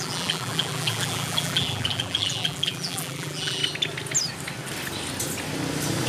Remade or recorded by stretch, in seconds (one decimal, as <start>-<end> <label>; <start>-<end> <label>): 0.0-3.6 remade; 3.6-6.1 recorded